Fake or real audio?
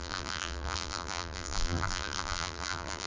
fake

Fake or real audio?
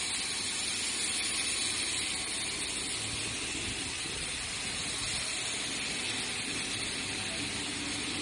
real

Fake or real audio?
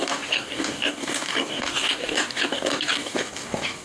fake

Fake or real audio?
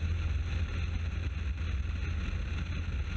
real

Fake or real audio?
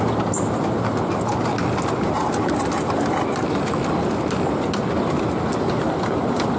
real